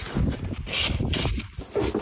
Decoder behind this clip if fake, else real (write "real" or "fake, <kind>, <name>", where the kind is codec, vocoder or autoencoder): real